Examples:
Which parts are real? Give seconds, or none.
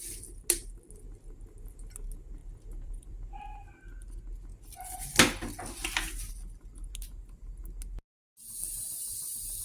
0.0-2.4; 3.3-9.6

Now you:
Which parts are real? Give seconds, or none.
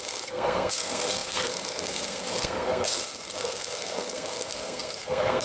none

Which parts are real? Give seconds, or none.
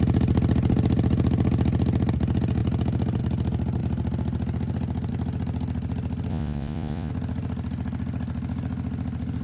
0.0-6.3; 7.1-9.4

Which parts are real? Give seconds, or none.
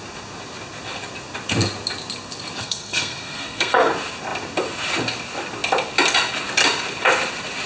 0.0-2.6; 3.9-7.7